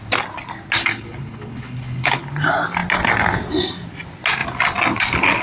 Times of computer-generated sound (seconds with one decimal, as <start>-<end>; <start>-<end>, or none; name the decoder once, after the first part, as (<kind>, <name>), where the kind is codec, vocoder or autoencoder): 0.8-2.3 (codec, HILCodec)